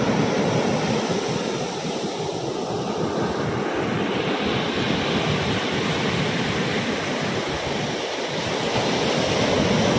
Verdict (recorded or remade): recorded